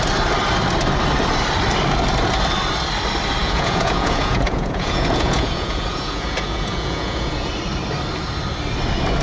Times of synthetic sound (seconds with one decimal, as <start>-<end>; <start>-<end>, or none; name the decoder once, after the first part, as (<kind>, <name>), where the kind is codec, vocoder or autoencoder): 3.4-7.5 (vocoder, Vocos)